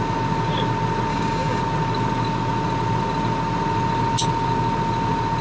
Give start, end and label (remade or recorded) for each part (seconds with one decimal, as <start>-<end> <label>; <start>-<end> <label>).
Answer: 0.0-1.1 recorded; 1.1-1.6 remade; 1.6-5.4 recorded